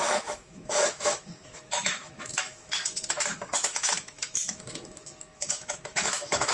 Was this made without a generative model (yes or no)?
no